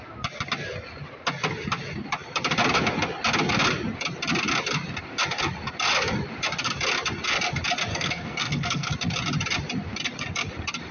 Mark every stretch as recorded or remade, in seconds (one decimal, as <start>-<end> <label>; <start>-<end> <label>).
0.0-7.9 recorded; 7.9-8.9 remade; 8.9-10.9 recorded